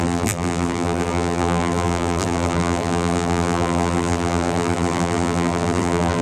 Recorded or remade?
remade